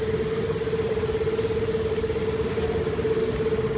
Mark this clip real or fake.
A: real